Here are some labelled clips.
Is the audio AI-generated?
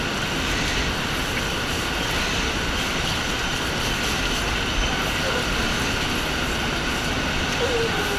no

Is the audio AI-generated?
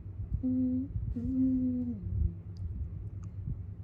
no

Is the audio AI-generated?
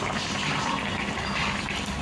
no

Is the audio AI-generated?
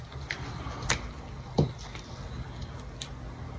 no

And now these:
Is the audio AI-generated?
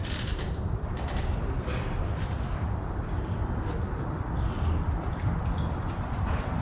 yes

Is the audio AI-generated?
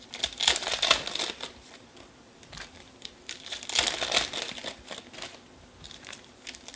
yes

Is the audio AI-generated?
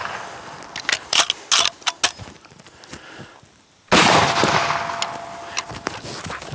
no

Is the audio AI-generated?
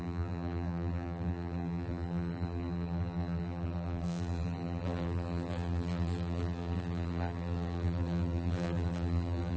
yes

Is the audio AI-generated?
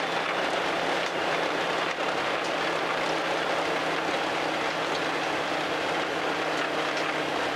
no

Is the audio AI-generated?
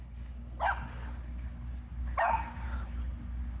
no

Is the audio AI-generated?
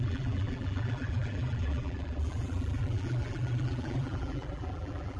yes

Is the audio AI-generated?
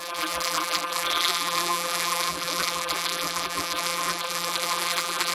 yes